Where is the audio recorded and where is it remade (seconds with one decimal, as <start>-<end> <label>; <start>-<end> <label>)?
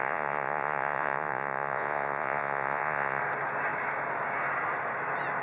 0.0-3.2 remade; 3.2-5.4 recorded